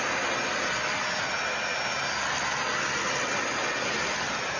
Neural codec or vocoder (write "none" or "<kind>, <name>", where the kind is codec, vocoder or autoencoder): none